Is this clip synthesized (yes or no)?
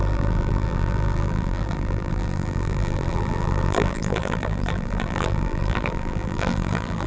yes